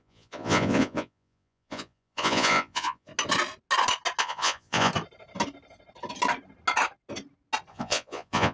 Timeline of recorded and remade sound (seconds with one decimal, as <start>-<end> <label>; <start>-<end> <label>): 0.0-3.1 remade; 3.1-4.2 recorded; 4.2-4.9 remade; 4.9-7.7 recorded; 7.7-8.5 remade